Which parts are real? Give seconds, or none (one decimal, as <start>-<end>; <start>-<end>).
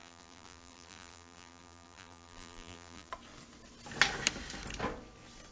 3.1-5.5